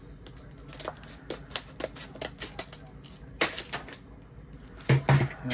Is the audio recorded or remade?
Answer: recorded